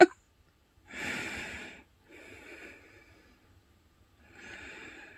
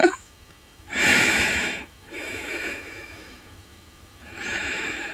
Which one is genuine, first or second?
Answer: first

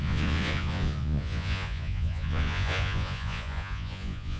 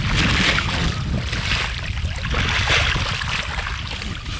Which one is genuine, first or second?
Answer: second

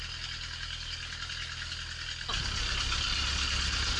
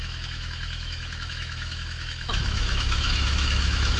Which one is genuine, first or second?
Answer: first